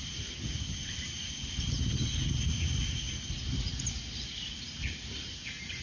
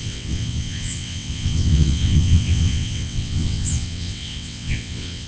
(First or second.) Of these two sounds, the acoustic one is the first